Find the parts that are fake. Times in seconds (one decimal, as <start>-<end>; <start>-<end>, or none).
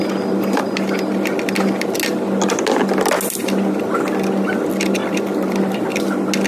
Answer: 5.0-6.0